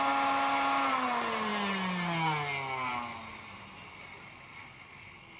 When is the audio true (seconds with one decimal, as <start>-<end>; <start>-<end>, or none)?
0.0-3.3; 4.9-5.4